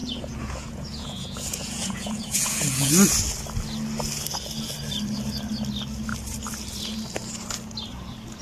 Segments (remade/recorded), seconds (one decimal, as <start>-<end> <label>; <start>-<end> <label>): 0.0-2.9 remade; 2.9-8.4 recorded